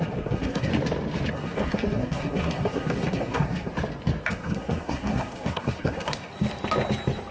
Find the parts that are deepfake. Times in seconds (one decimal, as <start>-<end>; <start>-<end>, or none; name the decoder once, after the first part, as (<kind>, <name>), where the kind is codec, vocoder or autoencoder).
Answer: 0.0-0.7 (codec, SNAC); 1.3-3.7; 4.3-6.3